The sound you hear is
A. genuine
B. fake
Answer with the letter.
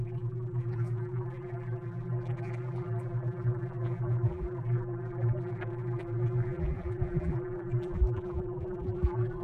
B